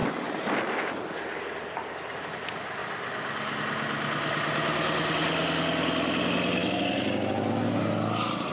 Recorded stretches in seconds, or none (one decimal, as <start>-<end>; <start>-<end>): 0.0-8.5